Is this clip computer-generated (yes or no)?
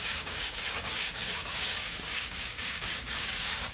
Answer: yes